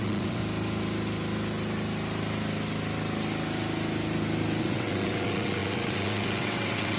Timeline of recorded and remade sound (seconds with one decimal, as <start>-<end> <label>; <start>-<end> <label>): 0.0-0.4 remade; 0.4-4.6 recorded; 4.6-7.0 remade